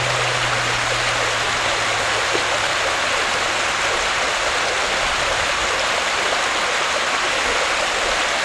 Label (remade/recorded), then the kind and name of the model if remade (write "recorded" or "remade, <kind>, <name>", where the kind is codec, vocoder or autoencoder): recorded